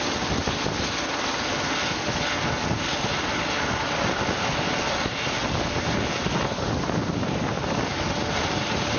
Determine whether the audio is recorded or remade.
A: recorded